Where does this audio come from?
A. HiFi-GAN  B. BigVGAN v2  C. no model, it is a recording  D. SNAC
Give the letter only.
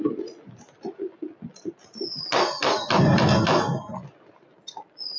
C